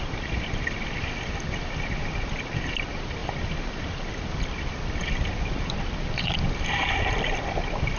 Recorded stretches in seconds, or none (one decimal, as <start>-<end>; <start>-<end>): 0.0-3.2; 5.1-8.0